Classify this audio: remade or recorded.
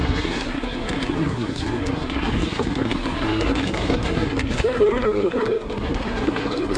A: remade